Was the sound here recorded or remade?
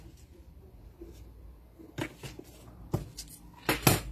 recorded